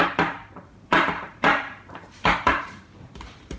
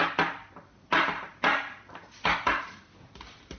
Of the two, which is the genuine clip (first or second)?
second